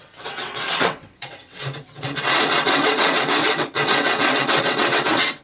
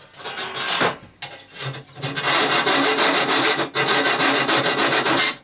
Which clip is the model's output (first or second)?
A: first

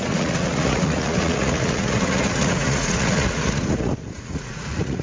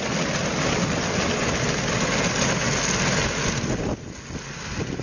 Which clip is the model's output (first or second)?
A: first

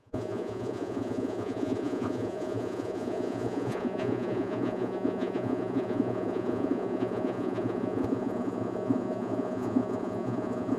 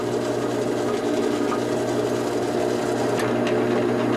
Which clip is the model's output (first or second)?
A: first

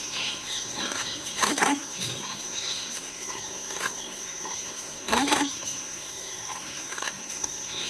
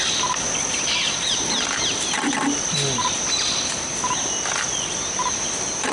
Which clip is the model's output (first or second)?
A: first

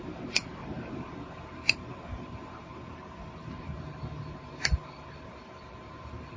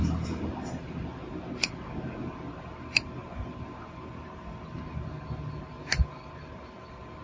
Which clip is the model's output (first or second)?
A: first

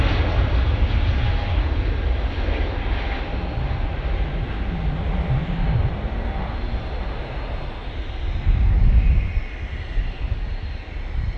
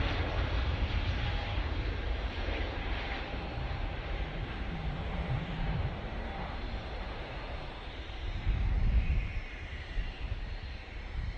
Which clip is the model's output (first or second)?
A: second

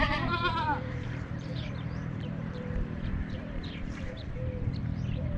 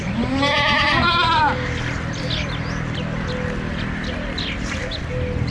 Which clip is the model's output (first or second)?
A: first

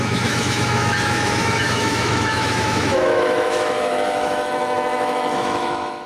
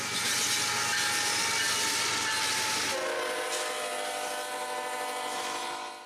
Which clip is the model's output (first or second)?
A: first